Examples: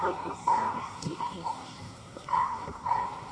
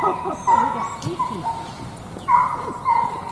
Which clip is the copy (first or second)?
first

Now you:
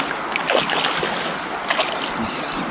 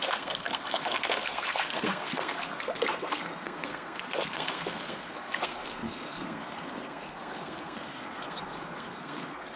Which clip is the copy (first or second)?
second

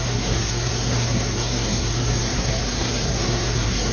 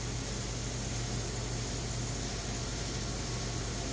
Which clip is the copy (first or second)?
first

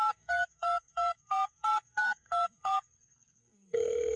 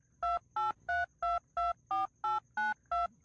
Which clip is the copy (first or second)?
first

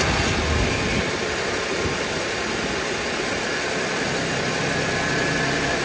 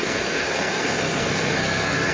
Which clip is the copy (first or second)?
second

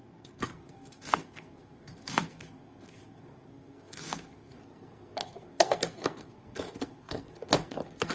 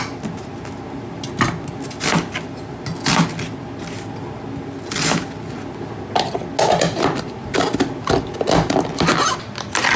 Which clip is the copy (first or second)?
first